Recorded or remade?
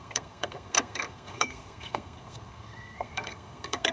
remade